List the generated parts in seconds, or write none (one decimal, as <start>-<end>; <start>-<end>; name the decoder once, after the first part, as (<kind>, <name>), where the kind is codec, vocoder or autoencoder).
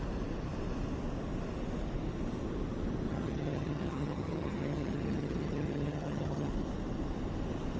3.1-6.5 (vocoder, HiFi-GAN)